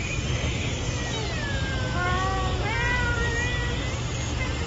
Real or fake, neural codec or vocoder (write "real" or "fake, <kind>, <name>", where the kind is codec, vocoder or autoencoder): real